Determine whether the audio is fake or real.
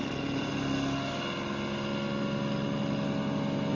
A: real